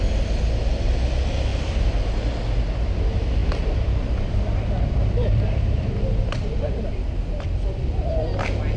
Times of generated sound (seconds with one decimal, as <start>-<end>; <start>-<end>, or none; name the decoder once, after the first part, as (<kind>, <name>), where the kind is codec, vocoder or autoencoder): 1.5-2.0 (vocoder, BigVGAN v2); 3.4-8.1